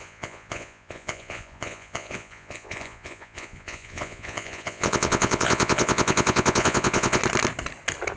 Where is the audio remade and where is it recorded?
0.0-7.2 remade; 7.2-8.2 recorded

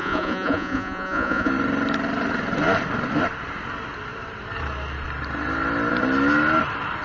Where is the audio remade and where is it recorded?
0.0-1.5 remade; 1.5-7.0 recorded

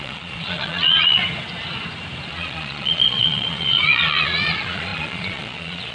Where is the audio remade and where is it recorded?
0.0-1.2 remade; 1.2-2.3 recorded; 2.3-5.9 remade

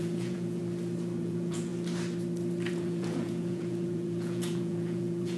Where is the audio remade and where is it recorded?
0.0-0.6 remade; 0.6-1.2 recorded; 1.2-1.7 remade; 1.7-2.7 recorded; 2.7-5.4 remade

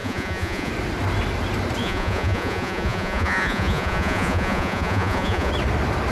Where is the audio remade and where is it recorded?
0.0-0.7 remade; 0.7-1.8 recorded; 1.8-5.5 remade; 5.5-6.1 recorded

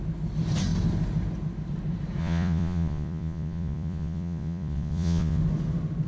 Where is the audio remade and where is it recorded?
0.0-2.2 recorded; 2.2-5.4 remade; 5.4-6.1 recorded

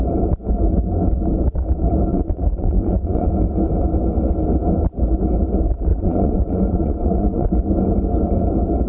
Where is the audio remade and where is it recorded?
0.0-2.1 recorded; 2.1-3.3 remade; 3.3-5.9 recorded; 5.9-7.5 remade; 7.5-8.9 recorded

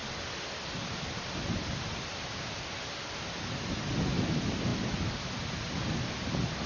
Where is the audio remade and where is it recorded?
0.0-6.7 recorded